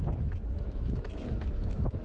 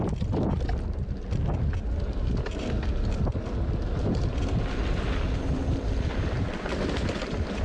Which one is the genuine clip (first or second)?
second